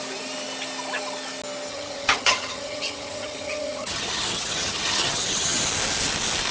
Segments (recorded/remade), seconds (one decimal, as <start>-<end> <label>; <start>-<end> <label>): 0.0-1.7 recorded; 1.7-5.6 remade; 5.6-6.5 recorded